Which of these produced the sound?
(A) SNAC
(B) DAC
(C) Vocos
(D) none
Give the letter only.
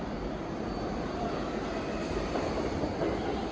D